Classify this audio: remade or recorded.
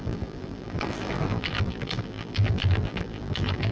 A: remade